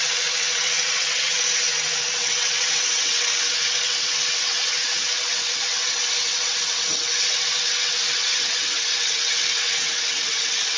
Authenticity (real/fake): fake